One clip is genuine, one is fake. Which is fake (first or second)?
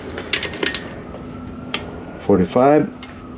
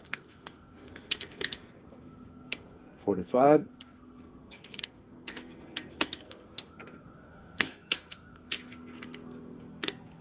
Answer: second